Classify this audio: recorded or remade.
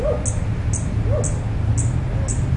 recorded